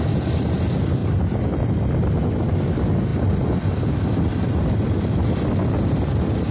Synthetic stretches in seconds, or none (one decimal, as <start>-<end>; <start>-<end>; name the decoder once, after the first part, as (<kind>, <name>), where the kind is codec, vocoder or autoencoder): none